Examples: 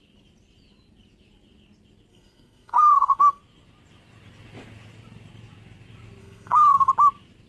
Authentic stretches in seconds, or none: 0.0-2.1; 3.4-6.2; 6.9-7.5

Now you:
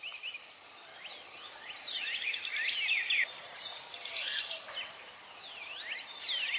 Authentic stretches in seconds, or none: 0.0-6.6

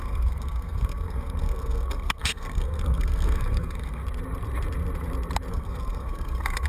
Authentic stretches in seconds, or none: 4.0-5.5

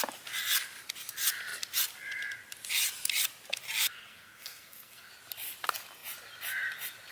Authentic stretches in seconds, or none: 0.0-3.9; 5.1-7.1

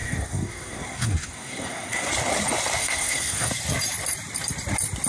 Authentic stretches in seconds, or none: 2.1-2.8; 3.5-5.1

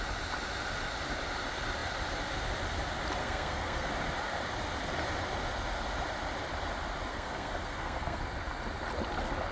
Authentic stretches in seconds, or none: 0.0-3.2; 3.9-7.1; 8.2-9.5

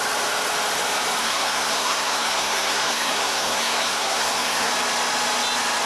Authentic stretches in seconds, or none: 0.0-1.2; 4.7-5.9

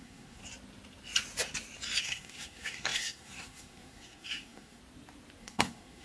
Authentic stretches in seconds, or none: 0.4-2.0; 4.8-5.4